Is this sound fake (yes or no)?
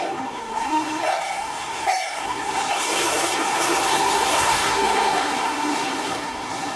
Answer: yes